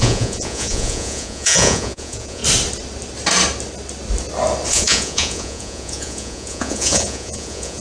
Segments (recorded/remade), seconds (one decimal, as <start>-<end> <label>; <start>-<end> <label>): 0.0-2.4 remade; 2.4-4.7 recorded; 4.7-7.8 remade